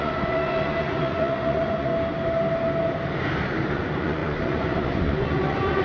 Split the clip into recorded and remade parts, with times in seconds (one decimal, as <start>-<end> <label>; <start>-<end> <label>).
0.0-1.9 remade; 1.9-3.7 recorded; 3.7-5.8 remade